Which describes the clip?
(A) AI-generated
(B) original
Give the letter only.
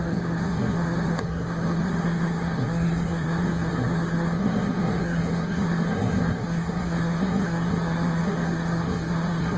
A